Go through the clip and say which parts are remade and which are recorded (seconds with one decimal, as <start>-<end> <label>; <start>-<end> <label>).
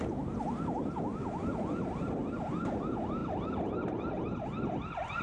0.0-5.2 recorded